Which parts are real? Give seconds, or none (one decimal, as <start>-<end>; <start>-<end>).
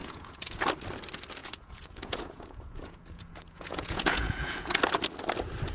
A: 0.6-1.4; 4.8-5.7